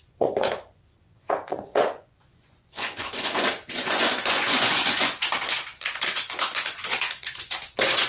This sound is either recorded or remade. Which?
remade